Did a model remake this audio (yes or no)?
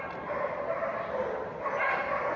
no